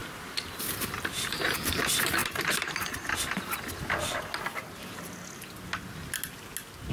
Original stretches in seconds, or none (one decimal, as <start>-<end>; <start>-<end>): 0.0-2.2; 3.2-6.9